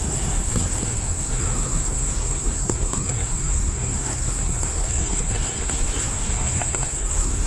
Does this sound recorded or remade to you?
remade